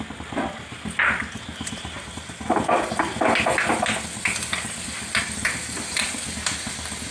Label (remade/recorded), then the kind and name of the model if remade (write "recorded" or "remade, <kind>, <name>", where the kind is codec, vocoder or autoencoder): recorded